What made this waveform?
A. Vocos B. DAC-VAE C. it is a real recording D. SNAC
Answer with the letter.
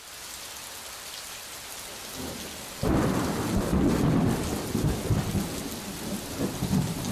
C